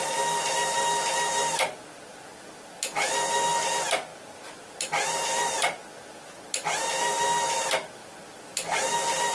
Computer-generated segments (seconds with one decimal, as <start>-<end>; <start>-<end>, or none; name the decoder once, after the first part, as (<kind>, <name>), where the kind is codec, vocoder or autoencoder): none